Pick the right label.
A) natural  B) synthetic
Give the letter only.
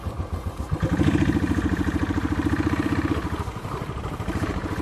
B